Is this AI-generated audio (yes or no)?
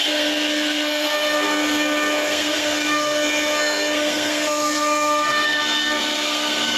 yes